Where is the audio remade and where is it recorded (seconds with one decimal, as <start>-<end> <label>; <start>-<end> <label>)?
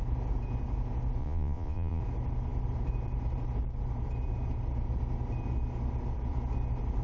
0.0-1.2 recorded; 1.2-2.0 remade; 2.0-7.0 recorded